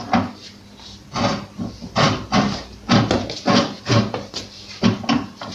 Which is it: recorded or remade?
recorded